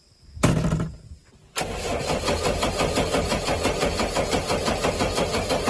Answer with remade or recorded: recorded